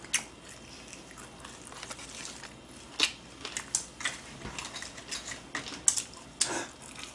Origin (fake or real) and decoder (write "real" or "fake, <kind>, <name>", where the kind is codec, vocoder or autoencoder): real